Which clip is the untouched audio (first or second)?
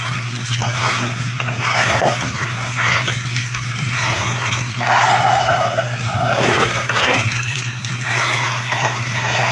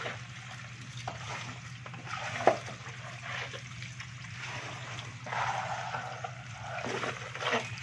second